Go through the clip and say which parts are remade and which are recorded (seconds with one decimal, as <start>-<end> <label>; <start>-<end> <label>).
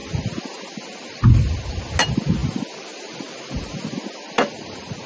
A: 0.0-5.1 recorded